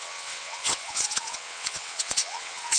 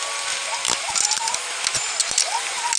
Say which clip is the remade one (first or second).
first